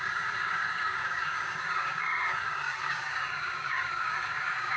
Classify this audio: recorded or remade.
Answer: remade